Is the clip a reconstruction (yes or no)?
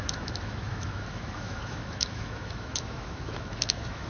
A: yes